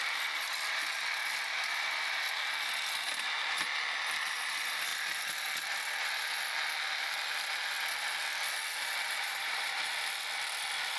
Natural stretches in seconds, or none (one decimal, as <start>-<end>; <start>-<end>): 0.0-8.7; 9.8-11.0